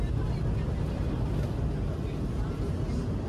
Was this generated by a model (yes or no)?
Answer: no